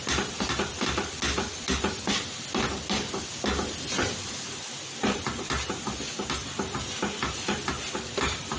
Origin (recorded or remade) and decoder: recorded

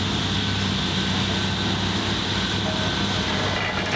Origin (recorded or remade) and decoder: recorded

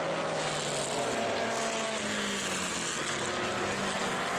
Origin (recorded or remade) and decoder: recorded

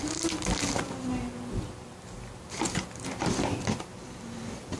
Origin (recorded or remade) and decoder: recorded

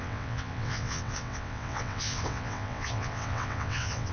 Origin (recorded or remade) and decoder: remade, vocoder, WaveNeXt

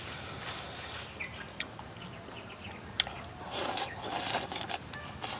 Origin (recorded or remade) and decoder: recorded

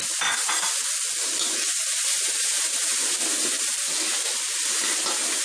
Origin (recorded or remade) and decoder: recorded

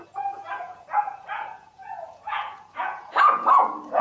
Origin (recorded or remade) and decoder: remade, vocoder, Vocos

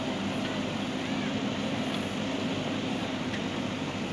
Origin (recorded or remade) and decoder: recorded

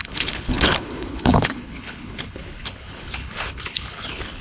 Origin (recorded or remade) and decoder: remade, codec, HILCodec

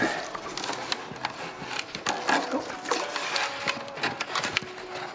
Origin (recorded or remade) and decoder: recorded